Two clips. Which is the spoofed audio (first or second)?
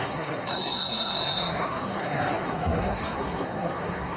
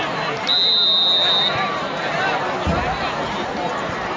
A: first